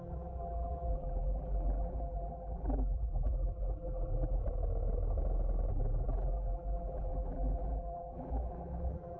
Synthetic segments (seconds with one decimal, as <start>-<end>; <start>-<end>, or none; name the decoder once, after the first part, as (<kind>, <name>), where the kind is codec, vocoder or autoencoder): 0.0-4.4 (vocoder, BigVGAN v2); 5.7-9.2